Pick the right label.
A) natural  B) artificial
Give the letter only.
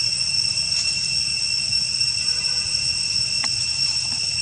A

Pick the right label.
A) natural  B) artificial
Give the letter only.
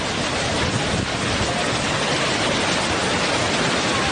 A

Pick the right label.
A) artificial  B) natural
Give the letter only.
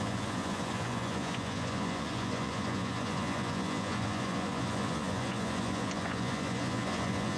A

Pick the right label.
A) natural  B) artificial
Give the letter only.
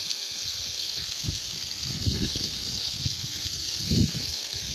B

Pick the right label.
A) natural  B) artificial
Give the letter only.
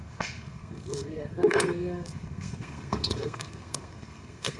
B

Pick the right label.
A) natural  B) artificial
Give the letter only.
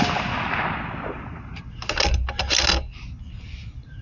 A